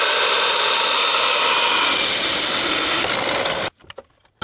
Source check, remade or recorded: recorded